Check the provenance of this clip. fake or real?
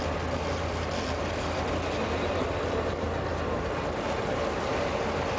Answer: real